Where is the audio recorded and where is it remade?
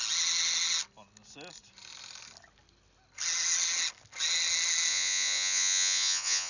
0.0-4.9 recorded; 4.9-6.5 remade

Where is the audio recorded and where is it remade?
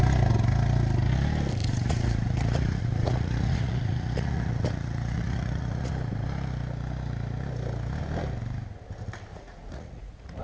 0.0-1.6 recorded; 1.6-5.9 remade; 5.9-9.3 recorded; 9.3-10.4 remade